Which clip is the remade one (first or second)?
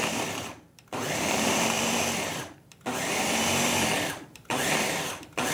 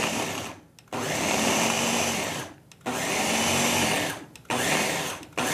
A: first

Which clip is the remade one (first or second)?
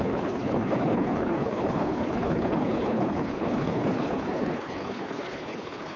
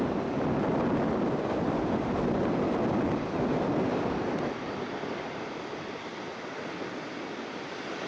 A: first